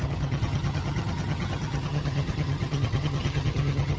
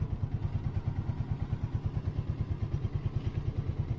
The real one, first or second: second